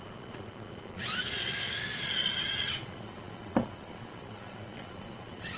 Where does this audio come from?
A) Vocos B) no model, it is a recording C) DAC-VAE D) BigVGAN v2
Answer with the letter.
A